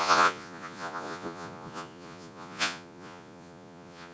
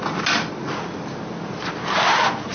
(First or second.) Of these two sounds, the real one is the second